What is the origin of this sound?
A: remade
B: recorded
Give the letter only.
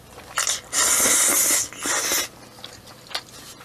B